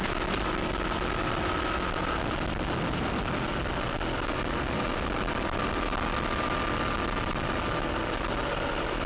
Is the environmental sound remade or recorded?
recorded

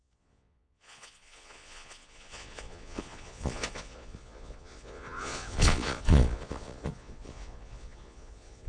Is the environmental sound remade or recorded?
remade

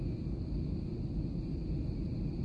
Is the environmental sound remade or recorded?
recorded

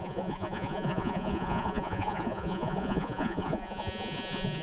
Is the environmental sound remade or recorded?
remade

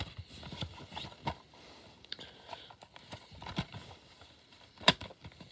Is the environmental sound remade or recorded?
recorded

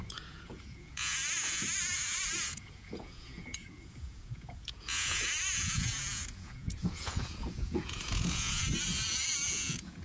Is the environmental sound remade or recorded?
remade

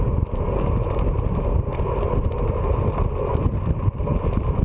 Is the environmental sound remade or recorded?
recorded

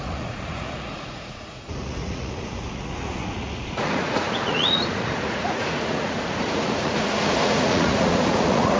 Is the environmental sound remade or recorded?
remade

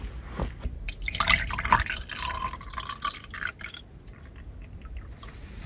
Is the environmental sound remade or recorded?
recorded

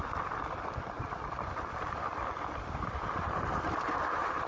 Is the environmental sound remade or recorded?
recorded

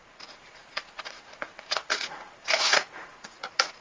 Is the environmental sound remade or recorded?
remade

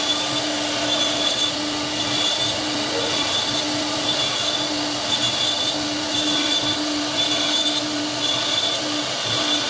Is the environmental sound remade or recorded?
recorded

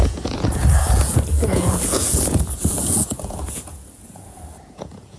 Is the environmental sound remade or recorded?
remade